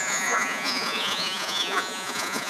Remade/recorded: remade